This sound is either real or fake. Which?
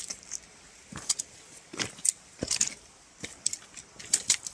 real